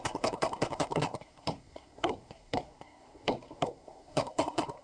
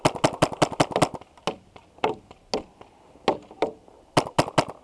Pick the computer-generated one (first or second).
first